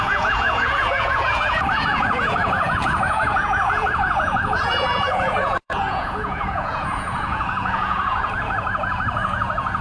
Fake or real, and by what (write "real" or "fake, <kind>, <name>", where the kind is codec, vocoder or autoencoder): fake, vocoder, Vocos